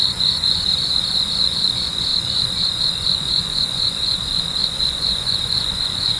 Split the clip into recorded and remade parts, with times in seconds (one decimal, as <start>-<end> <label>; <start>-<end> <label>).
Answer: 0.0-6.2 remade